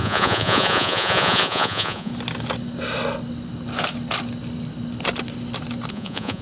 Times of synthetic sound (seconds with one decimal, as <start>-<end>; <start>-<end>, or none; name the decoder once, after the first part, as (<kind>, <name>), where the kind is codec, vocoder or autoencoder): 0.0-2.1 (vocoder, Vocos); 5.9-6.4